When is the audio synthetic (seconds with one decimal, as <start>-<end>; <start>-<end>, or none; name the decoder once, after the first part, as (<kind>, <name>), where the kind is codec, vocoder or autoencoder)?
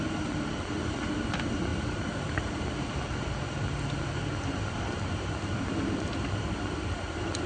none